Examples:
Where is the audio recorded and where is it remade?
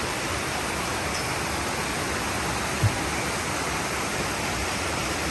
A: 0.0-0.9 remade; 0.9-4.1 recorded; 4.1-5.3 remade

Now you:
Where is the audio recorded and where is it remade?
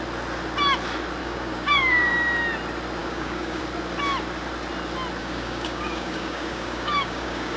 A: 0.0-1.2 recorded; 1.2-2.1 remade; 2.1-3.0 recorded; 3.0-3.6 remade; 3.6-5.2 recorded; 5.2-7.6 remade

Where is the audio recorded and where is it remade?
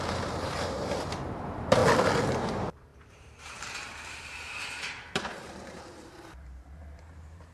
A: 0.0-1.8 remade; 1.8-2.3 recorded; 2.3-7.5 remade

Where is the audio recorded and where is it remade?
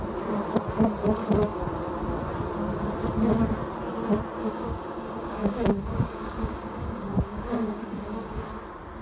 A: 0.0-1.0 recorded; 1.0-1.6 remade; 1.6-4.4 recorded; 4.4-8.4 remade; 8.4-9.0 recorded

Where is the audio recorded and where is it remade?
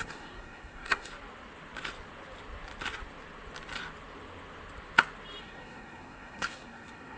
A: 0.0-1.1 remade; 1.1-5.4 recorded; 5.4-7.2 remade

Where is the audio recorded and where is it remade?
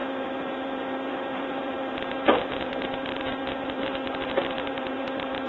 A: 0.0-5.5 remade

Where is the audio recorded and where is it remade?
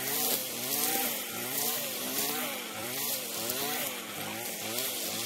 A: 0.0-0.4 recorded; 0.4-3.6 remade; 3.6-5.3 recorded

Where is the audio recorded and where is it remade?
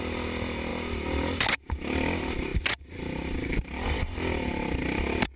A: 0.0-5.4 recorded